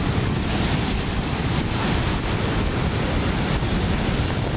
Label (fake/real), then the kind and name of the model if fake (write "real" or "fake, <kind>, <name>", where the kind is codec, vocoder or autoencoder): real